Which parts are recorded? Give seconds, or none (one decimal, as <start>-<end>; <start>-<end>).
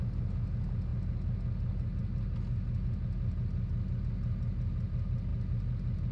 0.0-6.1